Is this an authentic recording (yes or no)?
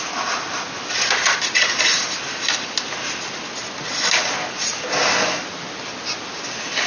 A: yes